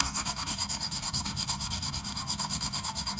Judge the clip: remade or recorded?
remade